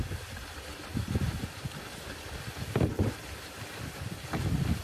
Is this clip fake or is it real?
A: real